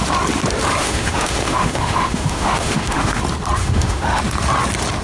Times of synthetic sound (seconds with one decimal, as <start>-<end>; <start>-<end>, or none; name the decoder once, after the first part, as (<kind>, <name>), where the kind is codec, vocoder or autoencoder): 0.8-3.2 (autoencoder, DAC-VAE); 3.6-4.2